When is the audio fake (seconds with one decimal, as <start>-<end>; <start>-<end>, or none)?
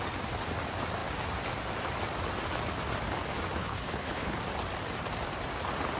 3.6-4.4